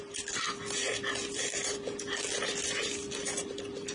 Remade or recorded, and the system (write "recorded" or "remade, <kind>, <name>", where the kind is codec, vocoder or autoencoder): recorded